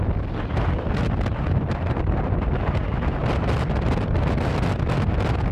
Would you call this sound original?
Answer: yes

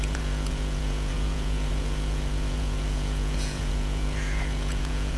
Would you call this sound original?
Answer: no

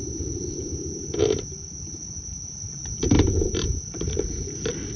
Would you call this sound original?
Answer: no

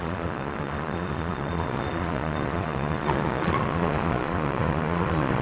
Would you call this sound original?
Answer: no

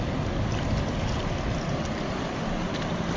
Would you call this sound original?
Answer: yes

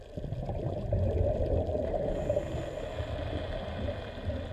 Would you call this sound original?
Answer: yes